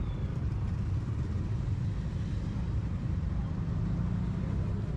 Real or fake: real